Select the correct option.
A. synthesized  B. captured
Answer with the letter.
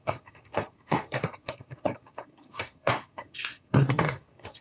A